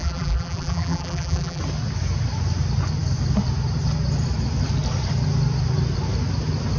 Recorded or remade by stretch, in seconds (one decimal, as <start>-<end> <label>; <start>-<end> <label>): 0.0-1.6 remade; 1.6-6.8 recorded